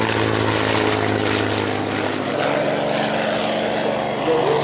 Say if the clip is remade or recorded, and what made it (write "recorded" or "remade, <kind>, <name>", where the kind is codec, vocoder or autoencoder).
recorded